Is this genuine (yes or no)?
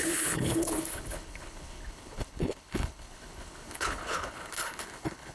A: no